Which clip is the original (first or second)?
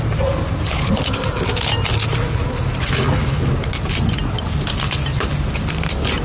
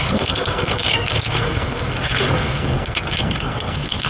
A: first